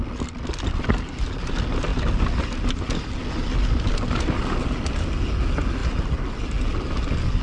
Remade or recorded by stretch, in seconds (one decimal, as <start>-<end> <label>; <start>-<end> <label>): 0.0-1.9 recorded; 1.9-3.9 remade; 3.9-7.4 recorded